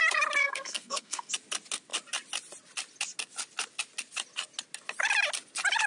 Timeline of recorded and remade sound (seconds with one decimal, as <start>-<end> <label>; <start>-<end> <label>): 0.0-0.4 recorded; 0.4-1.3 remade; 1.3-5.9 recorded